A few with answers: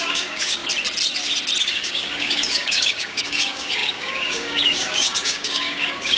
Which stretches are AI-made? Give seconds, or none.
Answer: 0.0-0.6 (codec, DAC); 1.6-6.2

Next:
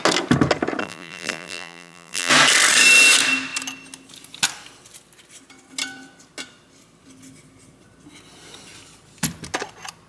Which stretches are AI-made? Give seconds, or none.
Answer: 0.8-2.3 (vocoder, BigVGAN v2)

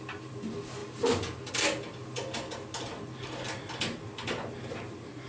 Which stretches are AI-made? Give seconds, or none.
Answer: none